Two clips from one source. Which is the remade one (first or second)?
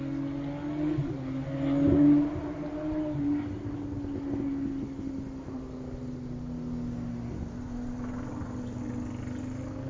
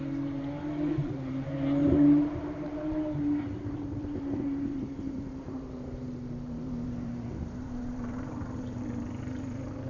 second